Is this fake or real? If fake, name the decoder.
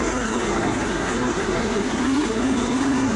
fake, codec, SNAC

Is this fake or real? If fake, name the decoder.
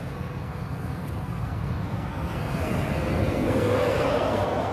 fake, codec, SNAC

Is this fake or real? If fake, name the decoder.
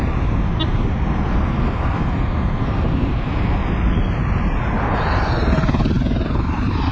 fake, vocoder, BigVGAN v2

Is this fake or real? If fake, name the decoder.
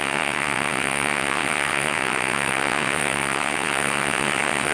fake, vocoder, WaveNeXt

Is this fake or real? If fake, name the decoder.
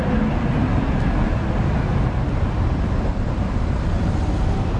real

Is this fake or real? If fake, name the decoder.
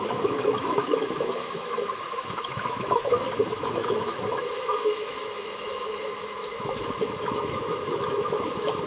fake, autoencoder, DAC-VAE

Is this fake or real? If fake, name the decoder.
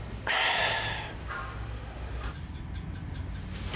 real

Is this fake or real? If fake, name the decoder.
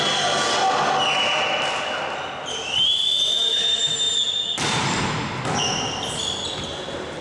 real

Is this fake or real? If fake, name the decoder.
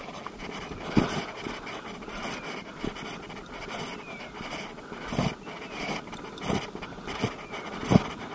real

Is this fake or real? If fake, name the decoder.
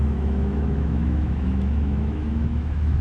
fake, autoencoder, DAC-VAE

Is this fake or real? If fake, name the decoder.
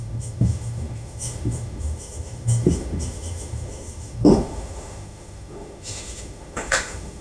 fake, autoencoder, DAC-VAE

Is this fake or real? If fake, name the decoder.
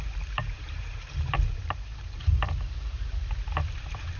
fake, vocoder, BigVGAN v2